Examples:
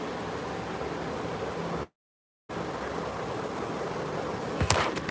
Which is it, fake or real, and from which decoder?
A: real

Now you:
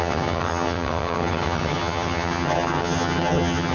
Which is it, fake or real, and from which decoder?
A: fake, vocoder, HiFi-GAN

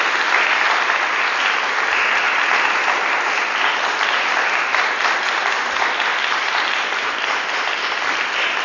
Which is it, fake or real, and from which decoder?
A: real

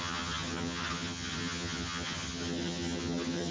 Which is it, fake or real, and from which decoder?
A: fake, vocoder, HiFi-GAN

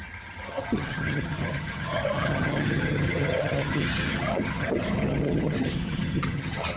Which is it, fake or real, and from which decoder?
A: fake, vocoder, HiFi-GAN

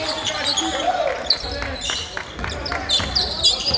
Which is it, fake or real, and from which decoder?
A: real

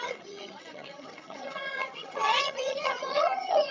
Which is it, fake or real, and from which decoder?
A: fake, vocoder, HiFi-GAN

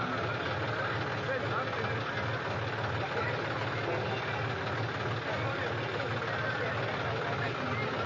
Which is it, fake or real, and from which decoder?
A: real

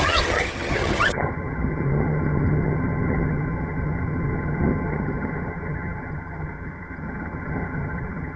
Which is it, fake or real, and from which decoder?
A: fake, vocoder, HiFi-GAN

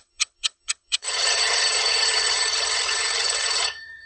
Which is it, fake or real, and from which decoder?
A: fake, vocoder, HiFi-GAN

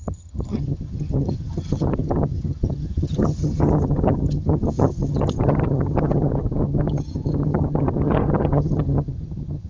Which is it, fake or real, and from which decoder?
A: fake, vocoder, HiFi-GAN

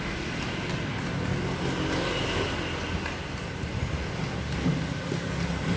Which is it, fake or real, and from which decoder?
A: real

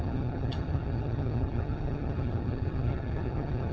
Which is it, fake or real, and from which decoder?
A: fake, vocoder, HiFi-GAN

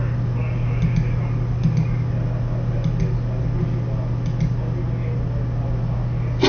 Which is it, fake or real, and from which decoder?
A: real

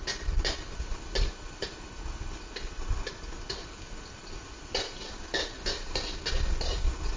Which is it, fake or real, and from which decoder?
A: real